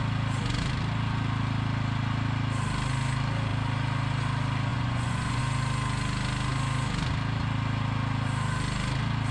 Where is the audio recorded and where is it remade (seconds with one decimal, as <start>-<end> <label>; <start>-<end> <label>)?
0.0-4.7 recorded; 4.7-5.4 remade; 5.4-9.3 recorded